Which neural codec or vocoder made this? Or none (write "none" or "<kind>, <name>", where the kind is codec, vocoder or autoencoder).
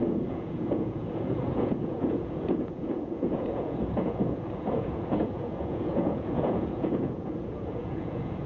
vocoder, Vocos